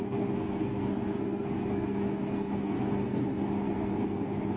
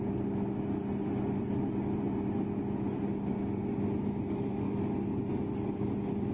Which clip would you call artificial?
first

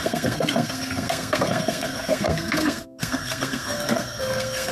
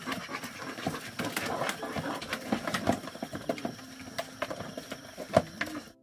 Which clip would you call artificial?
first